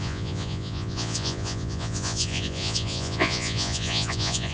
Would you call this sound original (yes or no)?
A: no